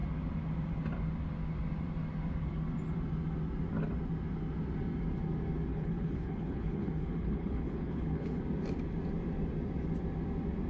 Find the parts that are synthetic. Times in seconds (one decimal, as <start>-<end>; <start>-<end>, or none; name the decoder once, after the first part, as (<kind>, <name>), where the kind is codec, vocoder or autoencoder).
5.7-8.4 (codec, HILCodec)

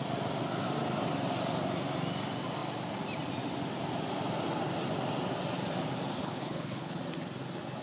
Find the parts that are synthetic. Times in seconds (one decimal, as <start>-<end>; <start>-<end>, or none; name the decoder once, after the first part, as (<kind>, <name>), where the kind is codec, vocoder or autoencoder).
6.2-7.0 (codec, HILCodec)

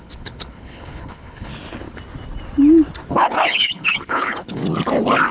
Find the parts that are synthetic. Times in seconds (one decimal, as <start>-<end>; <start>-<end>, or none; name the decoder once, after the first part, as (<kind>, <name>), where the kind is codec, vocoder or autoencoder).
0.0-1.5 (codec, HILCodec); 3.1-4.6